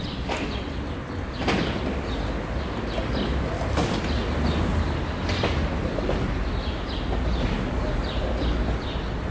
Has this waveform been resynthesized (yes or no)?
no